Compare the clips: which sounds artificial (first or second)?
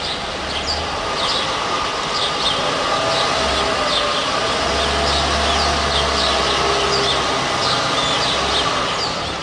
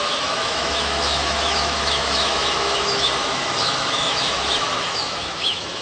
second